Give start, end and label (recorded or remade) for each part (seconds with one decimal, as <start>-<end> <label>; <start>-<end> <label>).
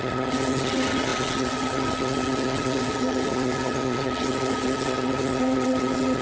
0.0-6.2 remade